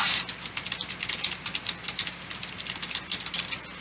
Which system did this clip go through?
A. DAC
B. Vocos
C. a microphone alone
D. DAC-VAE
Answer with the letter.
C